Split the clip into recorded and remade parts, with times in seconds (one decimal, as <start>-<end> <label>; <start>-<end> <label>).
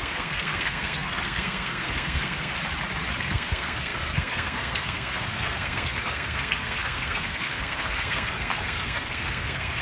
0.0-2.5 remade; 2.5-3.2 recorded; 3.2-9.8 remade